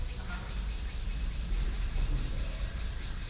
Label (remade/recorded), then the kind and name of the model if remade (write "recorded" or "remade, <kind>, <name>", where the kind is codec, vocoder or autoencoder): recorded